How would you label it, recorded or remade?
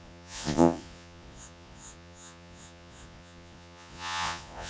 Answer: remade